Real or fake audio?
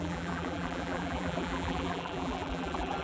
fake